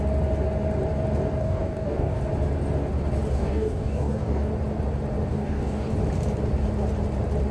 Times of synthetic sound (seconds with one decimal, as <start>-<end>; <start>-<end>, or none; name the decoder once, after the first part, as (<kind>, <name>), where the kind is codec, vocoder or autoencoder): 1.4-2.2 (codec, DAC); 3.3-4.5; 5.3-5.9